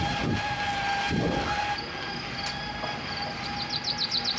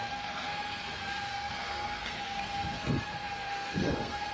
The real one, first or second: first